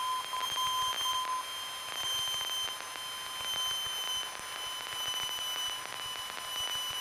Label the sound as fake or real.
real